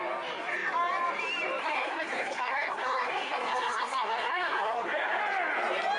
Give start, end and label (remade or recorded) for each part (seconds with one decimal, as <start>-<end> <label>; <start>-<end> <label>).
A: 0.0-1.6 recorded; 1.6-5.2 remade; 5.2-6.0 recorded

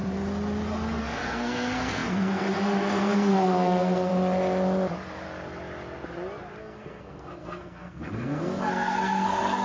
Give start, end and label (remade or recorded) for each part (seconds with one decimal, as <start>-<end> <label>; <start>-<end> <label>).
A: 0.0-1.0 recorded; 1.0-4.1 remade; 4.1-6.6 recorded; 6.6-9.6 remade